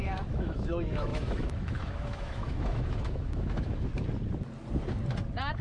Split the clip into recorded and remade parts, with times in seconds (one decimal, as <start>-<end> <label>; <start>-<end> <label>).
0.0-3.9 remade; 3.9-5.6 recorded

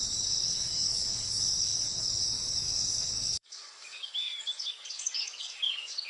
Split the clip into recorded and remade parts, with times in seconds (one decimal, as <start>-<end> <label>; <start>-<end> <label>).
0.0-6.1 remade

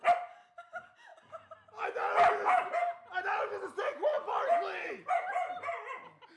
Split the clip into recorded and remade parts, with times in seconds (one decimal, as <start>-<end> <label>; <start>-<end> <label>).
0.0-6.4 recorded

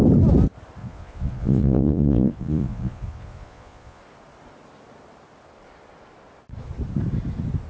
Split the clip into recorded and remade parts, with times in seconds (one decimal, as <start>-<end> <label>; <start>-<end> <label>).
0.0-0.8 recorded; 0.8-4.0 remade; 4.0-7.7 recorded

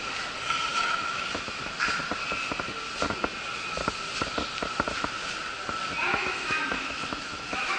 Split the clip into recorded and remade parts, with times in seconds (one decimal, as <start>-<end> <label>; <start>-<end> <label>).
0.0-0.7 recorded; 0.7-2.0 remade; 2.0-6.1 recorded; 6.1-7.8 remade

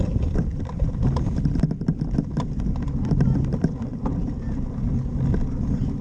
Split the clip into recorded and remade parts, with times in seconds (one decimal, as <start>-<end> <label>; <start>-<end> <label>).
0.0-0.5 recorded; 0.5-1.3 remade; 1.3-3.9 recorded; 3.9-4.9 remade; 4.9-6.0 recorded

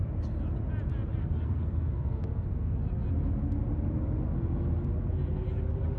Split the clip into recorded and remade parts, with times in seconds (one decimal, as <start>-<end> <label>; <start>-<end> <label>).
0.0-1.2 recorded; 1.2-2.8 remade; 2.8-6.0 recorded

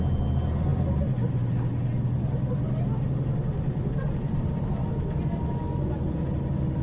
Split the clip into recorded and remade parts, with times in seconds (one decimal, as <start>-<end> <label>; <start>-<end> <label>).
0.0-6.8 recorded